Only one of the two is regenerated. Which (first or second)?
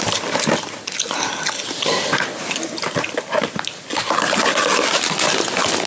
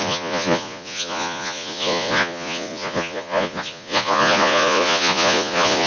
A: second